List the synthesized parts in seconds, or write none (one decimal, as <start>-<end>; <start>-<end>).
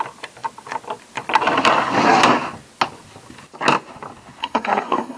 4.4-5.2